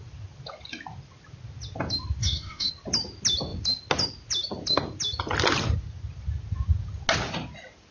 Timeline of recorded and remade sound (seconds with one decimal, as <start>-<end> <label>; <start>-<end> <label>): 0.0-2.2 recorded; 2.2-2.7 remade; 2.7-7.9 recorded